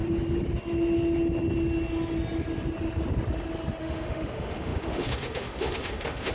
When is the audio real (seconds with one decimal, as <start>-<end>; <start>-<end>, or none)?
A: 0.0-3.8